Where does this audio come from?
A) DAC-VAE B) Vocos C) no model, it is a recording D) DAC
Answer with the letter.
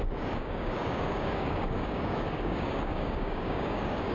D